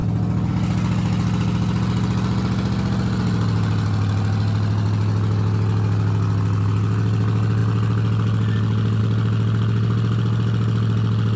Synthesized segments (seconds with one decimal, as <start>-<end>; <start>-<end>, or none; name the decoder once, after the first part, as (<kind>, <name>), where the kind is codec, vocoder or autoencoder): none